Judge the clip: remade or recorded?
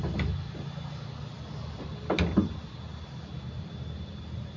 recorded